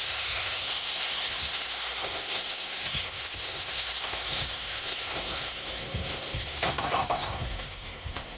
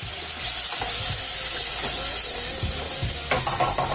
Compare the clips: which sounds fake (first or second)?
first